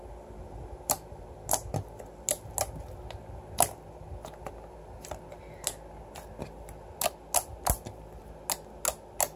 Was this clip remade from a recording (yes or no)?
no